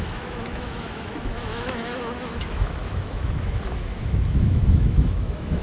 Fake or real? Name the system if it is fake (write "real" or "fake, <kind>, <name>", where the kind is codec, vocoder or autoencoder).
fake, autoencoder, DAC-VAE